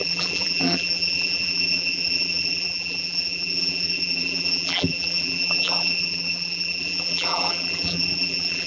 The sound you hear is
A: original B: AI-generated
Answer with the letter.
B